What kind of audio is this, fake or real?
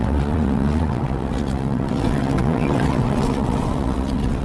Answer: fake